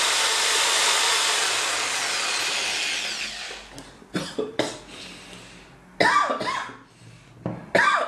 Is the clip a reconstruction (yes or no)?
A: no